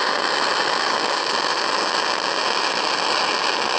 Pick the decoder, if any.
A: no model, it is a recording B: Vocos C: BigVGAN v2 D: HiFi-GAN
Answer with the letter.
A